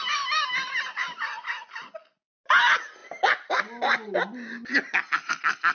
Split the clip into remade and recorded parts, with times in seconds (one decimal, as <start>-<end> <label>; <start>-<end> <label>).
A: 0.0-5.7 recorded